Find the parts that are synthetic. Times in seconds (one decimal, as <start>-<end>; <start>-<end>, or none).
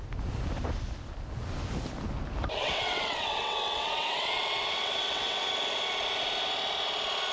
2.6-5.5